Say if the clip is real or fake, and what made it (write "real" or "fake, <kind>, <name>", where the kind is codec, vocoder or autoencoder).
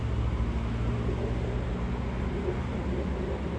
real